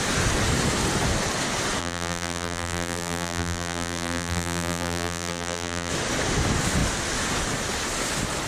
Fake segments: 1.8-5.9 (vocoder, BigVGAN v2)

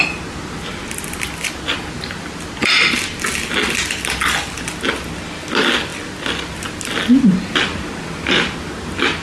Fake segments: none

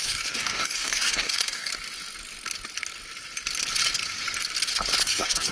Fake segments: 0.0-1.7 (codec, DAC); 5.0-5.5

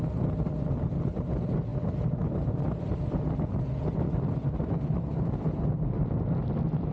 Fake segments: none